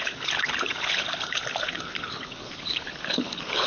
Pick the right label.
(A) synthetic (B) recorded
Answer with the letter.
A